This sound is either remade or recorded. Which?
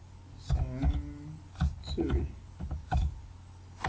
recorded